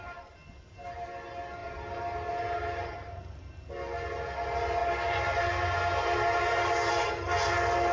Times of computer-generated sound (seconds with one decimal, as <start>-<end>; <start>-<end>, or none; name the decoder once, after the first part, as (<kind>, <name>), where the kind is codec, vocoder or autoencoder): none